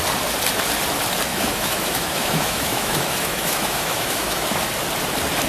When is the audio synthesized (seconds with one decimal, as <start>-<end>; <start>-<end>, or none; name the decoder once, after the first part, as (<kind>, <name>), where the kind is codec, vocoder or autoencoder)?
1.3-4.6 (autoencoder, DAC-VAE)